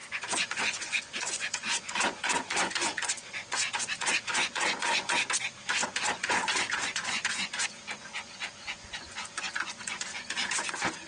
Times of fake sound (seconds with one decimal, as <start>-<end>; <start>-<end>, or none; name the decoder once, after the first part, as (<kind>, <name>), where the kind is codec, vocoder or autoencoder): 0.0-5.1 (vocoder, Vocos); 5.8-10.7